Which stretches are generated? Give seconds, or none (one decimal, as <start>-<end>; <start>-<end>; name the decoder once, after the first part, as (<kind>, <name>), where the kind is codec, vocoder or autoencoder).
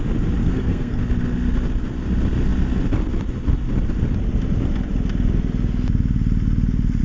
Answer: 0.4-1.0 (codec, SNAC)